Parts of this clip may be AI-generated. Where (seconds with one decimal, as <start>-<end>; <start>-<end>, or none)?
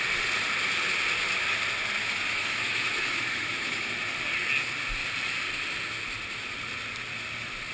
2.0-3.9